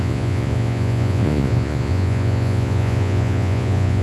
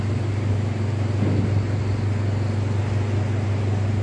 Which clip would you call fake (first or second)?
first